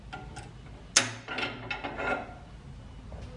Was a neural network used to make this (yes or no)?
no